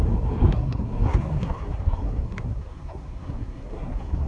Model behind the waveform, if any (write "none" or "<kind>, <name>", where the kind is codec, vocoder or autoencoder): codec, SNAC